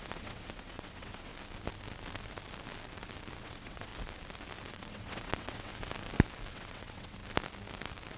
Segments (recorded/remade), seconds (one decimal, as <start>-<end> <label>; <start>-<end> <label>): 0.0-1.3 remade; 1.3-3.4 recorded; 3.4-3.9 remade; 3.9-4.7 recorded; 4.7-5.7 remade; 5.7-6.5 recorded; 6.5-7.2 remade; 7.2-8.2 recorded